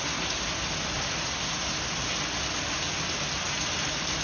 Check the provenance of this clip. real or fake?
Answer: real